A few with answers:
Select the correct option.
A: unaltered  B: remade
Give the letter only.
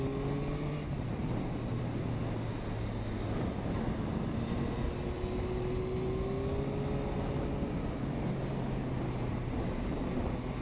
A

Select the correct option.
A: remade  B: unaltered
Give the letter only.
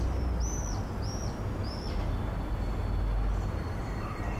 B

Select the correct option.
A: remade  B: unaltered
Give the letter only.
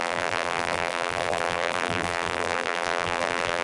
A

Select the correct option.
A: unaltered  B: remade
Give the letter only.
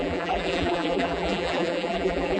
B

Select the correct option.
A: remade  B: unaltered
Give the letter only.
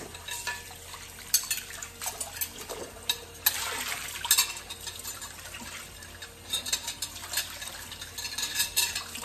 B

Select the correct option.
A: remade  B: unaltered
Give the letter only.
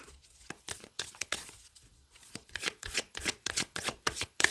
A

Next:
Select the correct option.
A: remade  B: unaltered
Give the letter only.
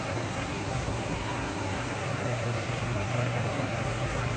A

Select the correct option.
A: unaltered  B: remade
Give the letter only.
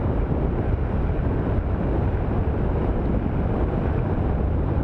A